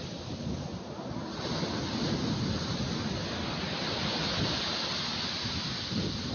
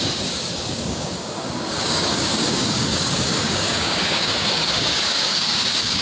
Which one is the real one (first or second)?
first